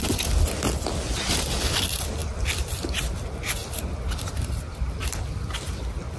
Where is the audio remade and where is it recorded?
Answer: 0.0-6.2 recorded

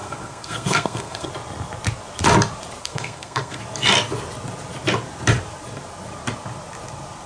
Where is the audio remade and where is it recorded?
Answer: 0.0-1.3 remade; 1.3-2.8 recorded; 2.8-3.6 remade; 3.6-7.3 recorded

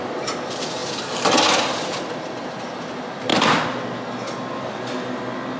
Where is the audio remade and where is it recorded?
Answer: 0.0-0.8 remade; 0.8-1.4 recorded; 1.4-3.3 remade; 3.3-4.6 recorded; 4.6-5.6 remade

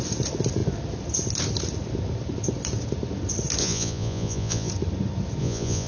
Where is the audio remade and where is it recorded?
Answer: 0.0-3.6 recorded; 3.6-4.7 remade; 4.7-5.4 recorded; 5.4-5.9 remade

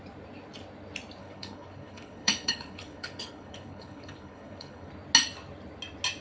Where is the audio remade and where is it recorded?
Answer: 0.0-1.2 recorded; 1.2-4.9 remade; 4.9-6.2 recorded